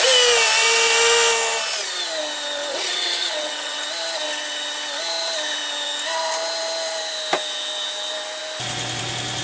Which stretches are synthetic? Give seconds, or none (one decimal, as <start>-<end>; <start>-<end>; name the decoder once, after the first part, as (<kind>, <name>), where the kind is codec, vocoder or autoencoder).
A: 2.7-3.8 (vocoder, WaveNeXt)